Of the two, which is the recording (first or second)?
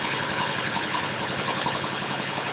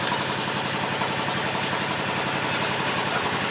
second